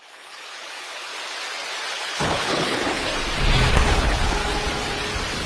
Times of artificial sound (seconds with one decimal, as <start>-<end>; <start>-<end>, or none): 0.0-1.1; 1.9-3.1; 3.7-4.4